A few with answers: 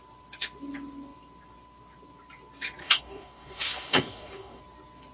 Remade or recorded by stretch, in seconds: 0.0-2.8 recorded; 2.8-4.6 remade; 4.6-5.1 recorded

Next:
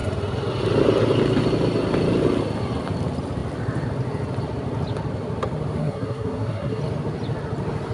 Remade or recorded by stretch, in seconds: 0.0-5.8 recorded; 5.8-6.8 remade; 6.8-7.9 recorded

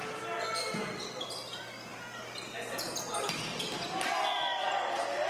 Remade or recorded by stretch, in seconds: 0.0-5.3 recorded

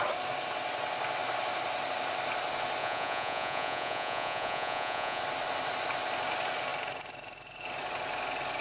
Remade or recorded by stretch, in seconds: 0.0-2.8 recorded; 2.8-5.2 remade; 5.2-8.6 recorded